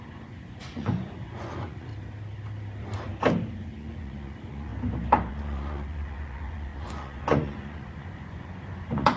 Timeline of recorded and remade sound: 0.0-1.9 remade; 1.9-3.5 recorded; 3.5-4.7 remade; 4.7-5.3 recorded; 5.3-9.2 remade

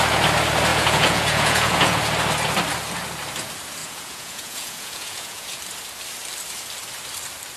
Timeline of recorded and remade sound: 0.0-0.7 recorded; 0.7-2.0 remade; 2.0-3.8 recorded; 3.8-5.6 remade; 5.6-7.6 recorded